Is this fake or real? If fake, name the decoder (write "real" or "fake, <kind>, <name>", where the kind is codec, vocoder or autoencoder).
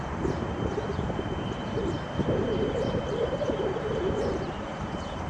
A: fake, vocoder, BigVGAN v2